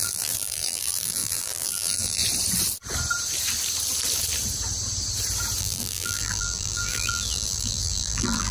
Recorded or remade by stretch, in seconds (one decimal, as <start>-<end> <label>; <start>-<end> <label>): 0.0-2.2 remade; 2.2-5.6 recorded; 5.6-8.5 remade